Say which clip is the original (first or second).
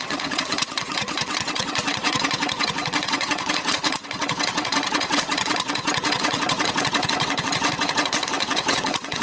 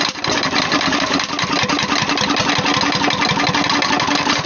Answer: second